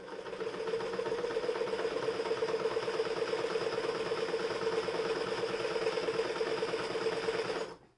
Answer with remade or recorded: recorded